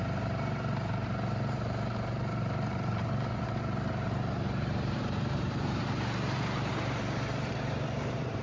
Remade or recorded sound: remade